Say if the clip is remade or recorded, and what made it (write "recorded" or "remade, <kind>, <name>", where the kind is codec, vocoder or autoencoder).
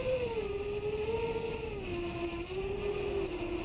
recorded